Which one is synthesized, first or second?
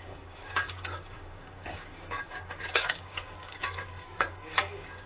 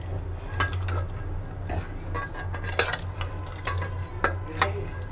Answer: first